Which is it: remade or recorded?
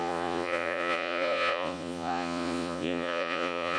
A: remade